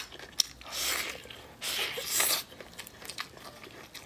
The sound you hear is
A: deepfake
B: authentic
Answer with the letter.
B